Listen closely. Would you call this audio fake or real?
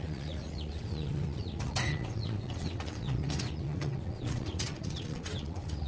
fake